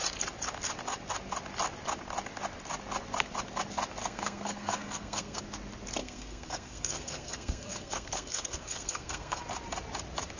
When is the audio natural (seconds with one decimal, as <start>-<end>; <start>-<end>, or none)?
0.0-4.0; 5.4-6.0; 9.4-10.4